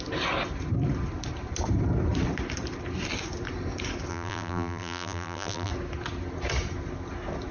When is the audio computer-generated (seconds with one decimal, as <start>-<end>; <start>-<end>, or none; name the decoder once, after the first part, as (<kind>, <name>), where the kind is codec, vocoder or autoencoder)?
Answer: 4.1-5.7 (vocoder, BigVGAN v2)